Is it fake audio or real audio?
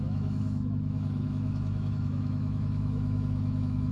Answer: fake